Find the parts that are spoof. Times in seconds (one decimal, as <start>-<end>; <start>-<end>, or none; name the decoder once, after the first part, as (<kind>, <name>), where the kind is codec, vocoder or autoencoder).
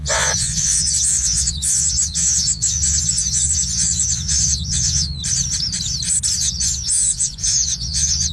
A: 0.0-5.2 (vocoder, Vocos); 6.4-8.3